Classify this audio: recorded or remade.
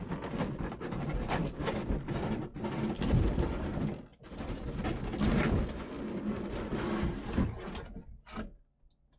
recorded